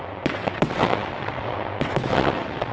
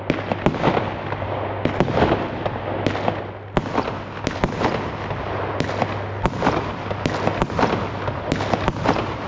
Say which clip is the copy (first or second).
first